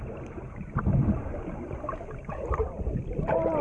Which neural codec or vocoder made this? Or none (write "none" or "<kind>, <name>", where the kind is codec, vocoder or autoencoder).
vocoder, BigVGAN v2